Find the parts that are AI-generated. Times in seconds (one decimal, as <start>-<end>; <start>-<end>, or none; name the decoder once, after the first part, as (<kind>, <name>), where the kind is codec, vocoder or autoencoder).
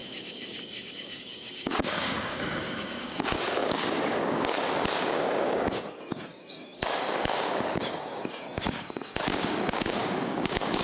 0.0-10.8 (codec, DAC)